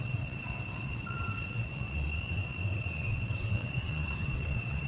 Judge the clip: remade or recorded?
remade